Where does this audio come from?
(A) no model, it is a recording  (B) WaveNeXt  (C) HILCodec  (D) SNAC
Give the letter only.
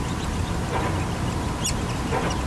A